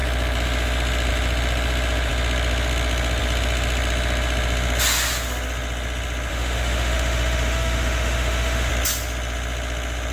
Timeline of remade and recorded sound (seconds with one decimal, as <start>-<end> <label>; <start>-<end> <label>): 0.0-6.3 recorded; 6.3-8.7 remade; 8.7-10.1 recorded